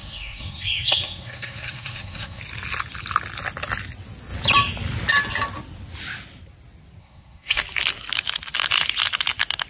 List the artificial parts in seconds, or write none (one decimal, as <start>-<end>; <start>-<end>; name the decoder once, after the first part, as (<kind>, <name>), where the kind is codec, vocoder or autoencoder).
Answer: 0.0-2.4 (codec, SNAC); 7.0-7.6